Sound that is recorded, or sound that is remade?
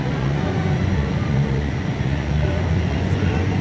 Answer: remade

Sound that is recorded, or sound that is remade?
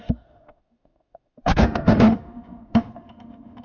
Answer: remade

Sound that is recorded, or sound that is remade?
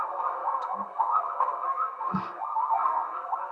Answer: remade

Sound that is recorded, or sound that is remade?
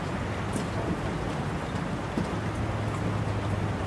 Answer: recorded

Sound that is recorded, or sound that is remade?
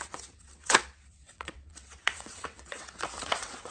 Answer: remade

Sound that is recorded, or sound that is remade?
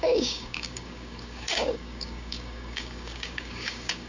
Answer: remade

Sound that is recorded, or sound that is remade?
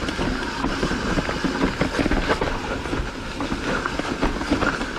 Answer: recorded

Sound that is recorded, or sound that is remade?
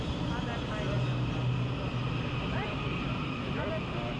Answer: recorded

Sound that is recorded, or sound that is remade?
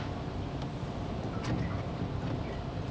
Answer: recorded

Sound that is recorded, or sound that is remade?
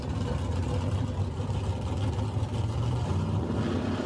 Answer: recorded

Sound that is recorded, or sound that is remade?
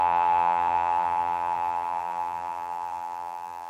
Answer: remade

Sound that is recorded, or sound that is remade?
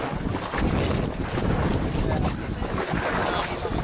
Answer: recorded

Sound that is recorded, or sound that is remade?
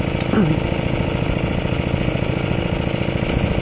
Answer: recorded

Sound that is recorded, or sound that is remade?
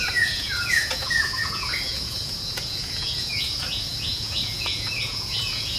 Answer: remade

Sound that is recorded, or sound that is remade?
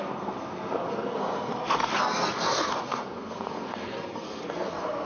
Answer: remade